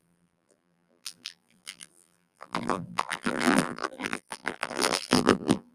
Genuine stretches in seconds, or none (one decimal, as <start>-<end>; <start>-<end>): none

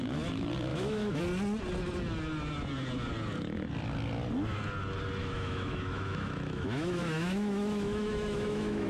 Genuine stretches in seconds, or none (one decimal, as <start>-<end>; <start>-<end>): 0.0-0.7; 1.2-5.2

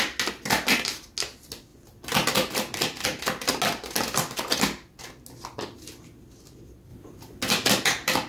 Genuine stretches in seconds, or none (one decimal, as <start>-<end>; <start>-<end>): 0.0-8.3

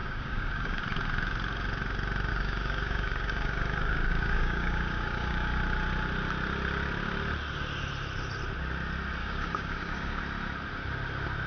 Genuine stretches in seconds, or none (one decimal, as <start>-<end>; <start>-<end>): 0.8-2.3; 5.6-9.2; 10.2-11.5

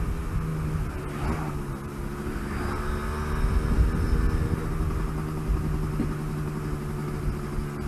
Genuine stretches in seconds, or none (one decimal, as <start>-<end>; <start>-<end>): 0.0-7.9

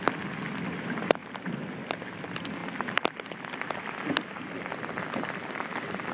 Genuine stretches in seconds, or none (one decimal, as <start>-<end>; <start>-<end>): 0.0-6.1

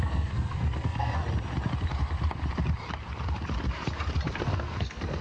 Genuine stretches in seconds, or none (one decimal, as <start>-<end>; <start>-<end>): 1.2-4.3

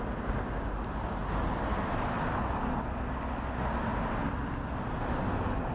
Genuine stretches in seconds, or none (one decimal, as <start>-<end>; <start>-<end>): 0.0-5.7